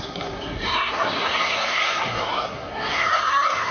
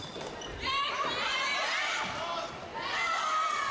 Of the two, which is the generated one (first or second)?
first